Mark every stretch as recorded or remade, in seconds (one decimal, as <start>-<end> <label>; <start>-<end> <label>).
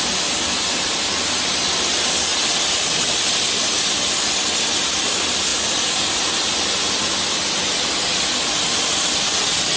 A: 0.0-9.8 recorded